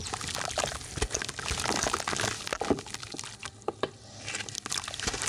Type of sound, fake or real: real